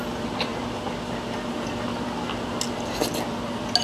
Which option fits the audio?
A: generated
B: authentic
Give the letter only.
B